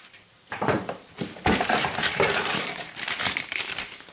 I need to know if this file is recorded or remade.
remade